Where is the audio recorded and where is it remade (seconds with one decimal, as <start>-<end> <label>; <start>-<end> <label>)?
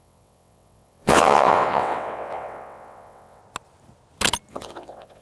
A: 0.0-3.4 remade; 3.4-4.5 recorded; 4.5-5.2 remade